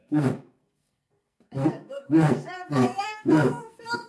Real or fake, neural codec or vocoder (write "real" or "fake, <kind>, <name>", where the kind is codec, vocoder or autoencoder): fake, codec, SNAC